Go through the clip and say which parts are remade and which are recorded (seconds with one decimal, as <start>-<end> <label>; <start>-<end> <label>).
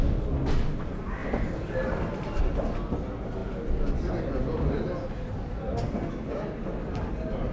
0.0-7.5 recorded